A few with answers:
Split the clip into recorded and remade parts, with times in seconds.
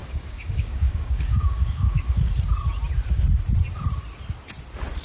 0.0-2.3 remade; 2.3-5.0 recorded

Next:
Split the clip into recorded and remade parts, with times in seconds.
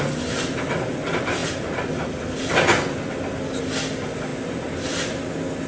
0.0-5.7 recorded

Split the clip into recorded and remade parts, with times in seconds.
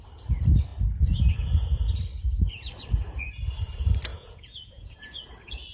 0.0-4.1 recorded; 4.1-5.3 remade; 5.3-5.7 recorded